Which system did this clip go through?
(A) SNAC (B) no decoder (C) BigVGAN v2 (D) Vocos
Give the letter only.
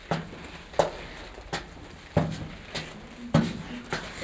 B